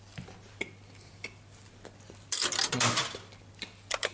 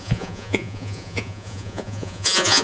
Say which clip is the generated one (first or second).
second